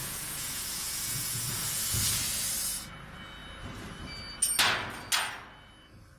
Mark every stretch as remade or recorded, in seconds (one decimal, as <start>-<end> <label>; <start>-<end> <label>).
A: 0.0-2.2 remade; 2.2-6.2 recorded